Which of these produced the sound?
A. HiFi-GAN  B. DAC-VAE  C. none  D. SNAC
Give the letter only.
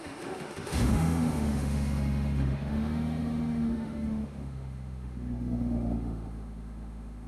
B